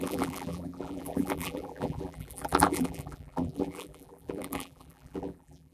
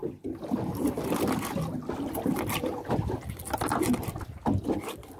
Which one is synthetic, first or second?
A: first